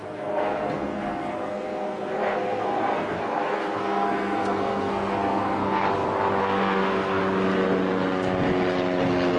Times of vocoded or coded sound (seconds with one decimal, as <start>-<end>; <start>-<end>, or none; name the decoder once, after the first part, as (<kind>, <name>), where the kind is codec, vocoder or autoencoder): 0.0-5.8 (codec, SNAC); 6.4-7.2

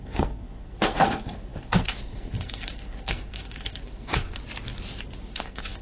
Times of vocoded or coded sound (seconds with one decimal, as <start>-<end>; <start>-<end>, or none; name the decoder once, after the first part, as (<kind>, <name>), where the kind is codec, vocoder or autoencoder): 0.0-4.4 (codec, SNAC); 5.2-5.8

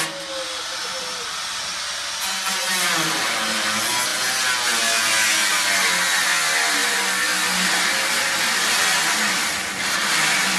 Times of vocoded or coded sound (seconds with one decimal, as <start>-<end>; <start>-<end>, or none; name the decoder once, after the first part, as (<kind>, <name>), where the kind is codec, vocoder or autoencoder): none

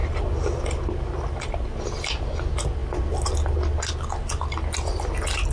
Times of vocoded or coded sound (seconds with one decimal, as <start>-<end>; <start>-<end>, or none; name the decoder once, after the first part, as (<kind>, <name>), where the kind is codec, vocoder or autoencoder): none

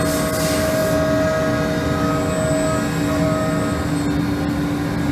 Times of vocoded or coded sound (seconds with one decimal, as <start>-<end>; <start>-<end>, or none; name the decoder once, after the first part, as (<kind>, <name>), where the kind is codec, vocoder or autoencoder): none

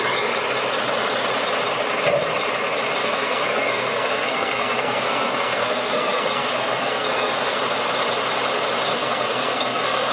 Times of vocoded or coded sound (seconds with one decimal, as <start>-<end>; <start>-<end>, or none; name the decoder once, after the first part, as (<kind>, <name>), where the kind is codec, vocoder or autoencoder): 3.0-7.6 (codec, SNAC); 9.0-10.1